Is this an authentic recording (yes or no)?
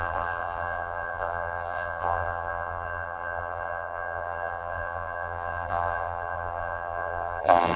no